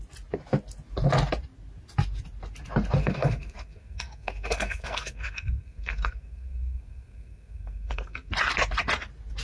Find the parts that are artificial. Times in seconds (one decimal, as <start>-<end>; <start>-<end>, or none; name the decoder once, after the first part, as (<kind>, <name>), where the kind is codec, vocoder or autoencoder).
3.0-8.3 (codec, SNAC)